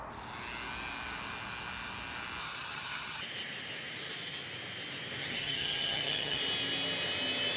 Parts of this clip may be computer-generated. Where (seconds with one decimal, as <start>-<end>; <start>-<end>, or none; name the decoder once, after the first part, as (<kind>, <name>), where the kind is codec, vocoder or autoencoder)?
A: 2.4-3.2 (vocoder, HiFi-GAN); 5.2-6.4